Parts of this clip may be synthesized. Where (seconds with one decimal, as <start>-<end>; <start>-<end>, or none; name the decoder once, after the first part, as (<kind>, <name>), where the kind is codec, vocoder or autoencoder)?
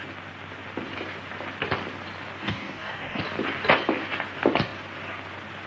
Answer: 2.4-3.2 (codec, DAC)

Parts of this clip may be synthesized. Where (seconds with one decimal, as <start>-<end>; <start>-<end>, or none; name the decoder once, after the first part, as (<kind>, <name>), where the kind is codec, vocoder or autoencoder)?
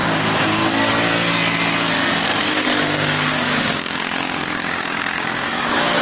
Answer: 0.0-0.9 (codec, DAC); 2.3-6.0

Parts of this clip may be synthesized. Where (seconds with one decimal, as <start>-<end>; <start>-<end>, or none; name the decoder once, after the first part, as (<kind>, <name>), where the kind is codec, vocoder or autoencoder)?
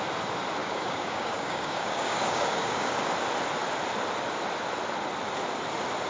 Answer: 0.6-3.1 (codec, DAC)